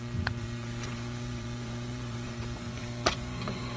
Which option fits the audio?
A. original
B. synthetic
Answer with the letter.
B